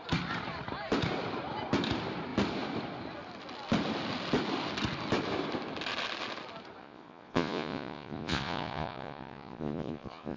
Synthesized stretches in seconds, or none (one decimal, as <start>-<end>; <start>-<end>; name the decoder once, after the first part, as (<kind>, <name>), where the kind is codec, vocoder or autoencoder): 6.8-10.4 (vocoder, Vocos)